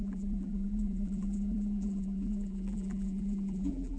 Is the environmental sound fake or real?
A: fake